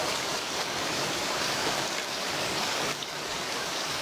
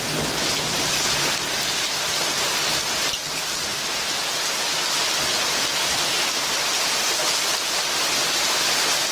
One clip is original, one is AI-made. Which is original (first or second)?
second